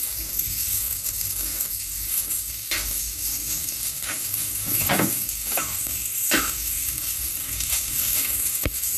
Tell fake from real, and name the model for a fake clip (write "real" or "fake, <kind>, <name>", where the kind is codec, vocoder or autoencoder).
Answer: fake, codec, DAC